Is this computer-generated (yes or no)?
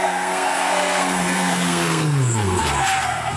yes